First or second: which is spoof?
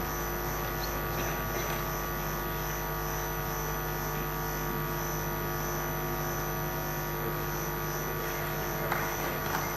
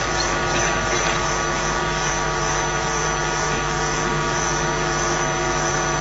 second